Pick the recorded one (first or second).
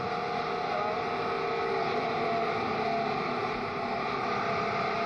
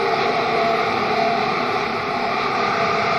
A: first